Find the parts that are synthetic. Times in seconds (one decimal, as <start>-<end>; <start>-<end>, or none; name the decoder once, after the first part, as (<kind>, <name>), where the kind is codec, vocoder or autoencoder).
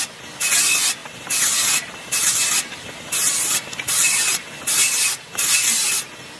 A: 1.0-3.6 (vocoder, BigVGAN v2); 4.0-4.7